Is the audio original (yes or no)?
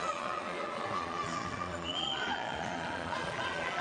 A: no